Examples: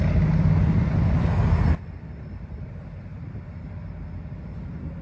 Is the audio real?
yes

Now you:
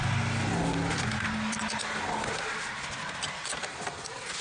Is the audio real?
yes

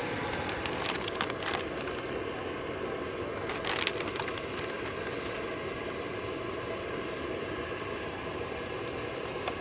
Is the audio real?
yes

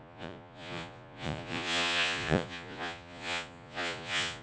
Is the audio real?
no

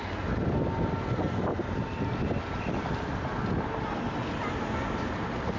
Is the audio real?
yes